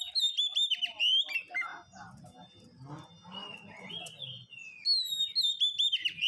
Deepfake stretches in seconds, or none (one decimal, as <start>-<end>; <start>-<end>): none